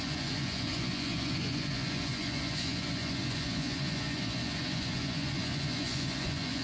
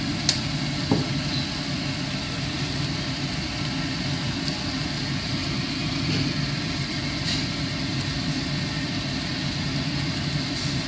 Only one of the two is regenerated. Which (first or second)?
first